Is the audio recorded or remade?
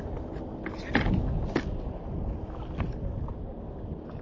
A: recorded